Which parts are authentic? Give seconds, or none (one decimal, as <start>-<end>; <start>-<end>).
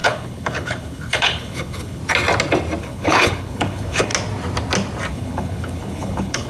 2.0-2.8; 4.1-5.1